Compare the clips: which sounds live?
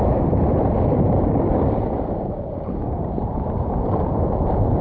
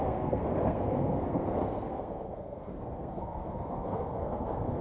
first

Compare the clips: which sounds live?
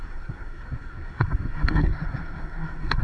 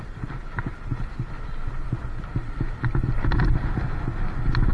second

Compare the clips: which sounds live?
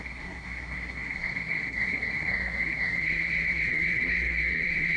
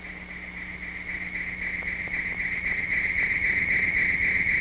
second